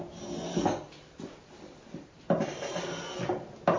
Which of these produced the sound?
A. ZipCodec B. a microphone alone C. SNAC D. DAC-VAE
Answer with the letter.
B